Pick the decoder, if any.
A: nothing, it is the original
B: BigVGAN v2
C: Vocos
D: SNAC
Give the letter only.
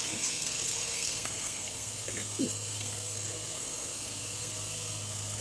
D